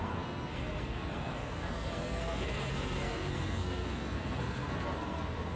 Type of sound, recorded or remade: remade